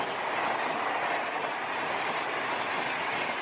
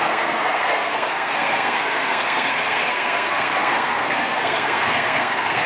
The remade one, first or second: second